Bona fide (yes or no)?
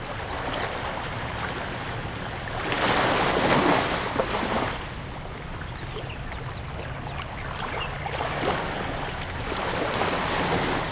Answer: yes